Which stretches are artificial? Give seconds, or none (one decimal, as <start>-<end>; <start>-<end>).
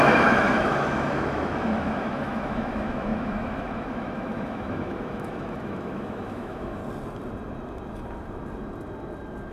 0.0-6.8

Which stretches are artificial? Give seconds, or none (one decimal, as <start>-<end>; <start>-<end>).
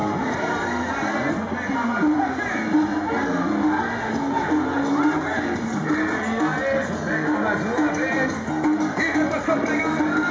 0.0-1.4; 5.3-6.2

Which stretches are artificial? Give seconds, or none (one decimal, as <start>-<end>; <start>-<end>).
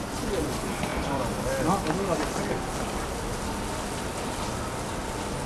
none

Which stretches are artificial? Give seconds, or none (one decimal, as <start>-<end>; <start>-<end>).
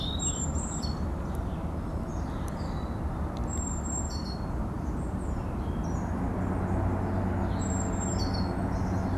none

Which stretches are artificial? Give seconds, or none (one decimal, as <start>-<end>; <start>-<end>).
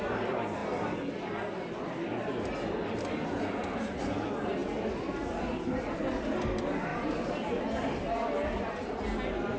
none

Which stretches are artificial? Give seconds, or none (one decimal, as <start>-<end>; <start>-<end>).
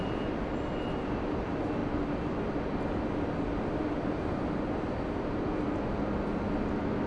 none